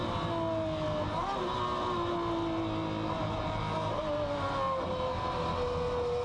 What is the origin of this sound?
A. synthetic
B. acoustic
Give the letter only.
B